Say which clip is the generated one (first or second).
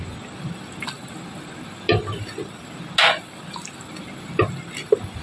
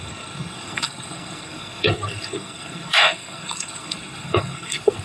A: second